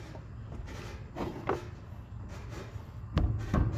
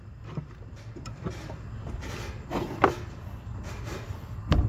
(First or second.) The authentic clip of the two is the first